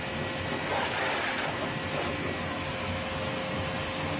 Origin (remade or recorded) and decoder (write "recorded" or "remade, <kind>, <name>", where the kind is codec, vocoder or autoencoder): recorded